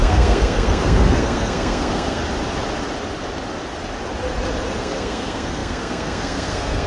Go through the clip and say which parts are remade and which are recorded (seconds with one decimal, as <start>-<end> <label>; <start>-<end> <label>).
0.0-2.2 remade; 2.2-4.8 recorded; 4.8-6.9 remade

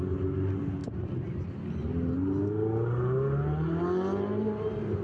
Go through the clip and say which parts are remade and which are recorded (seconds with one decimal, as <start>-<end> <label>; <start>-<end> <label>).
0.0-5.0 recorded

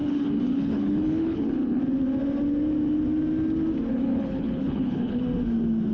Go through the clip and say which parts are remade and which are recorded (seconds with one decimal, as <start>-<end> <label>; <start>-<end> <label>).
0.0-1.8 remade; 1.8-3.9 recorded; 3.9-5.2 remade; 5.2-5.9 recorded

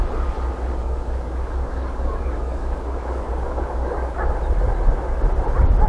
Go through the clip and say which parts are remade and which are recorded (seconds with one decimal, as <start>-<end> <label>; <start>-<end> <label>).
0.0-0.8 recorded; 0.8-4.3 remade; 4.3-5.9 recorded